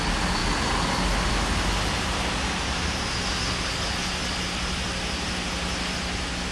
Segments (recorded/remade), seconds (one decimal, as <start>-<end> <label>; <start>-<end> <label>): 0.0-6.5 recorded